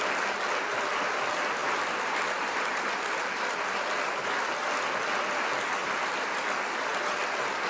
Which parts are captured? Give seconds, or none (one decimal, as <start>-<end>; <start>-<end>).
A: 0.0-7.7